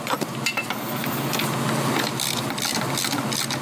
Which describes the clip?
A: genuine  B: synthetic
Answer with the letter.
A